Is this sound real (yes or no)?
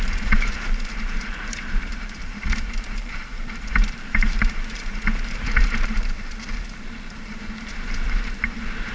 no